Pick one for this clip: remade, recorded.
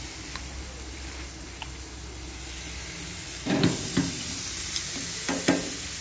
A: recorded